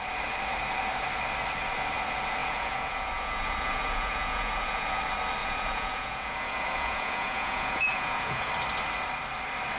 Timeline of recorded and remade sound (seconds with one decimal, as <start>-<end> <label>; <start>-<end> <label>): 0.0-2.4 recorded; 2.4-5.0 remade; 5.0-5.4 recorded; 5.4-8.5 remade; 8.5-9.8 recorded